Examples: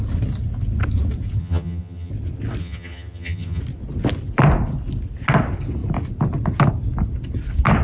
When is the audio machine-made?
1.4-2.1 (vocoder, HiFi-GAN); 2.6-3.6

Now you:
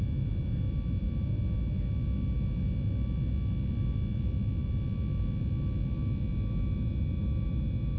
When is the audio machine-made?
none